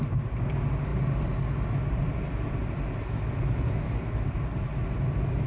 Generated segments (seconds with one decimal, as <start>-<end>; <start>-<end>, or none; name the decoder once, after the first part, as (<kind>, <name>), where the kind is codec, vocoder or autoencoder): none

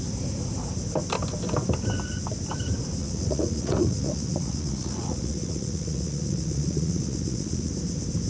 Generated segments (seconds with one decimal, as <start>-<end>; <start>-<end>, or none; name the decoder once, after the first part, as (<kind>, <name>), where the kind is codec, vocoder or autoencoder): 3.0-7.7 (vocoder, Vocos)

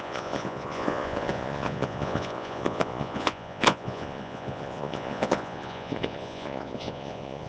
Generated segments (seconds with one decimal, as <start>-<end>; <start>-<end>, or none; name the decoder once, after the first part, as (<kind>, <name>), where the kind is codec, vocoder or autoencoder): 0.0-7.5 (vocoder, Vocos)

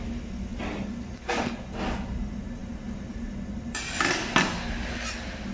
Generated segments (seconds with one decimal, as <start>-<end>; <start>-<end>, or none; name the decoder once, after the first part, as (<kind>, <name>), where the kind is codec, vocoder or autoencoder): none

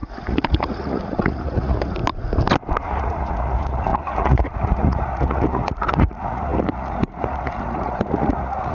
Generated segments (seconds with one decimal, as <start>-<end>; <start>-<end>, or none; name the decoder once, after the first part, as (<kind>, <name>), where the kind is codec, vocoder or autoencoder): 0.0-2.0 (vocoder, Vocos); 2.8-8.7

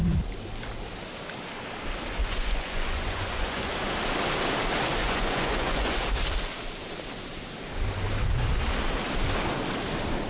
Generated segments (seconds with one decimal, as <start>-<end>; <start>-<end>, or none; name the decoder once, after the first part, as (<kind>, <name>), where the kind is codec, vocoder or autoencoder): 2.2-3.7 (vocoder, Vocos); 5.0-6.0

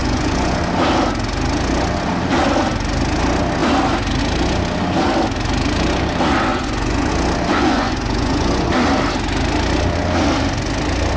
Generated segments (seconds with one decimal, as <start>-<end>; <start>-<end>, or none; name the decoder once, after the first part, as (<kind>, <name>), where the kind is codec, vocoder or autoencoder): 0.0-0.6 (vocoder, Vocos); 6.5-7.1; 7.5-8.7